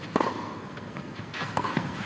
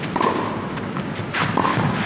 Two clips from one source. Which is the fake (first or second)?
first